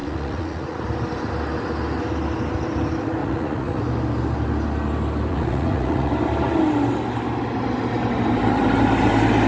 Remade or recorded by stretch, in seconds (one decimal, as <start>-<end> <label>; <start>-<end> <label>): 0.0-0.8 remade; 0.8-3.2 recorded; 3.2-3.8 remade; 3.8-5.3 recorded; 5.3-6.1 remade; 6.1-9.5 recorded